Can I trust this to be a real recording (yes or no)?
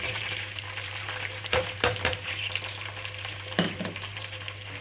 no